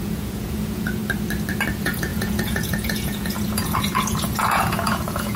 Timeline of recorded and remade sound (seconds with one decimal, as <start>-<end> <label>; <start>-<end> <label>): 0.0-1.0 remade; 1.0-1.7 recorded; 1.7-5.4 remade